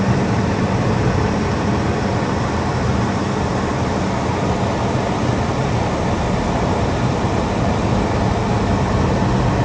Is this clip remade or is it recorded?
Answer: recorded